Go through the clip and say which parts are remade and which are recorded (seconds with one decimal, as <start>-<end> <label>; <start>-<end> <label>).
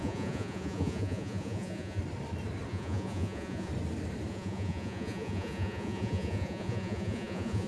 0.0-2.0 remade; 2.0-2.7 recorded; 2.7-3.7 remade; 3.7-4.3 recorded; 4.3-7.7 remade